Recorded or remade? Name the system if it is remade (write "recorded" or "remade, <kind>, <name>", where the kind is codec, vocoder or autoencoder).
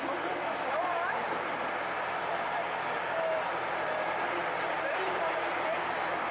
recorded